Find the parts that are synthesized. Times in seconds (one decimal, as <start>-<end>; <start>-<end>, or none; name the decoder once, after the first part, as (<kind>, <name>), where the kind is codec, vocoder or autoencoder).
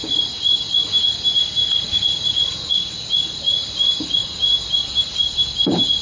0.0-0.9 (vocoder, Vocos); 1.6-2.7